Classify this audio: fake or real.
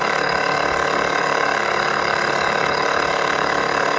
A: fake